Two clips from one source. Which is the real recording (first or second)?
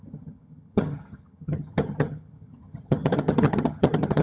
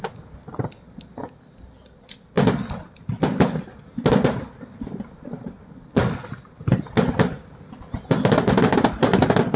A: second